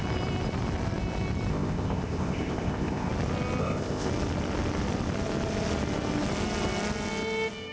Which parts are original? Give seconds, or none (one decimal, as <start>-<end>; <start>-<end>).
0.0-1.5; 3.1-3.6; 4.1-7.7